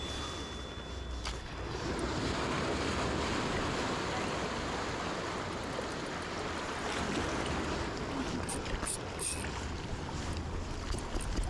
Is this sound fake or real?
real